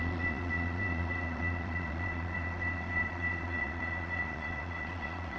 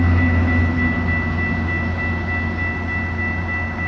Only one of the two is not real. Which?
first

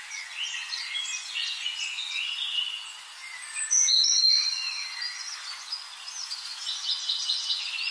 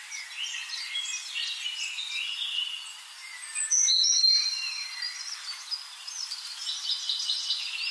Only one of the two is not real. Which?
first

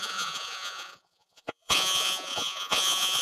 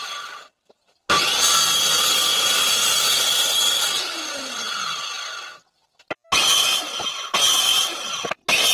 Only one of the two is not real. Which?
first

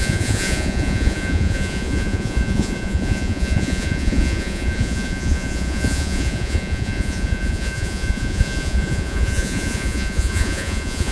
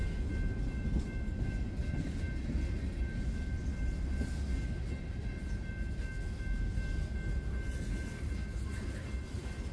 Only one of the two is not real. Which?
first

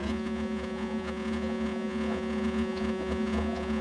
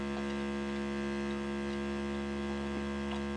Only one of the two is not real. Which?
first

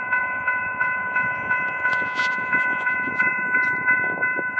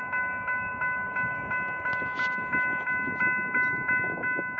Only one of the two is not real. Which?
first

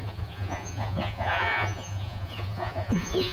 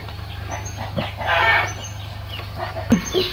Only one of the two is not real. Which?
first